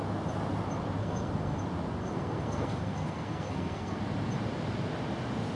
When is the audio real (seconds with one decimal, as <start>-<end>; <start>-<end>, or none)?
0.0-1.0; 1.6-2.0; 4.0-5.6